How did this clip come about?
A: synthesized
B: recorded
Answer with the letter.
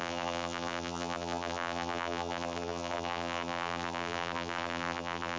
A